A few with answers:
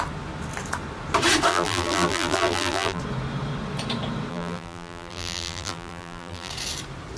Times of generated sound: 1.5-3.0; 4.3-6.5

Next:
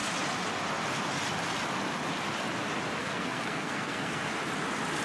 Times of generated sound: 3.0-4.3

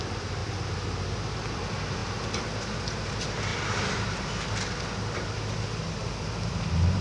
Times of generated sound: none

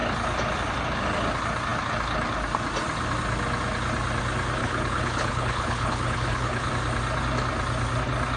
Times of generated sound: 4.6-6.7

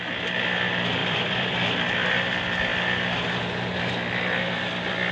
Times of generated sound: 1.0-2.3